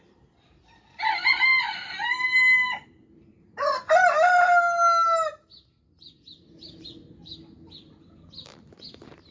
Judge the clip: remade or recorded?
recorded